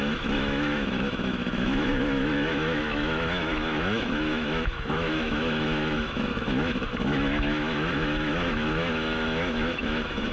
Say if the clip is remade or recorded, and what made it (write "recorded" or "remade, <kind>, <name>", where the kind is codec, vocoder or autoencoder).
remade, autoencoder, DAC-VAE